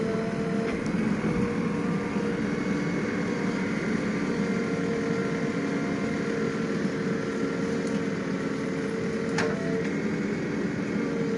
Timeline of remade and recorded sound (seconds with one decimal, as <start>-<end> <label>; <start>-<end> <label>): 0.0-11.4 recorded